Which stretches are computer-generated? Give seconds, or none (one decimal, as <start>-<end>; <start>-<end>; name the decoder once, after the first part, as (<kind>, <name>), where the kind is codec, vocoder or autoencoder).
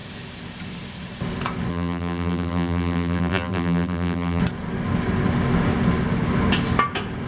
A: 1.7-4.4 (vocoder, BigVGAN v2)